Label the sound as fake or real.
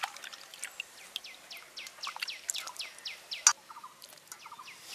real